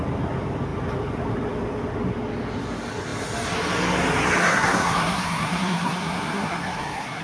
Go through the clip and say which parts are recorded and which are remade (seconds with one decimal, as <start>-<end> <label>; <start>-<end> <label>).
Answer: 0.0-4.4 recorded; 4.4-7.2 remade